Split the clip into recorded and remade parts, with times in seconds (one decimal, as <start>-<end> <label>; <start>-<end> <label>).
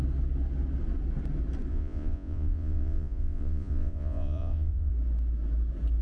0.0-1.7 recorded; 1.7-4.9 remade; 4.9-6.0 recorded